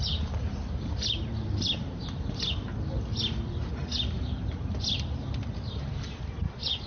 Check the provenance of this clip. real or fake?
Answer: real